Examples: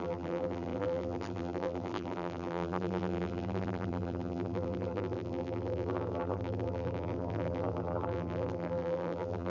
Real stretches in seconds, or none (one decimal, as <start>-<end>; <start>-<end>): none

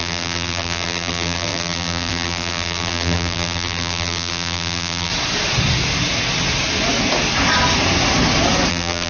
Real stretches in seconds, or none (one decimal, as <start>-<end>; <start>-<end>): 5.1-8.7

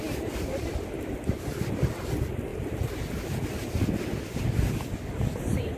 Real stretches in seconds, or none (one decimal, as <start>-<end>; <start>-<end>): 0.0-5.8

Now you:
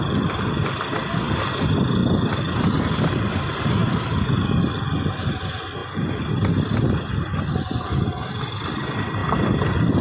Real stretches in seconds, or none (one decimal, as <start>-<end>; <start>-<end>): 0.0-2.0; 3.3-3.8; 4.8-9.2

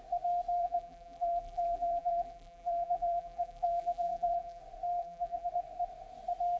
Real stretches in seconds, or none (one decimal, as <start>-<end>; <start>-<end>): 0.0-0.6; 4.6-5.0; 5.5-6.6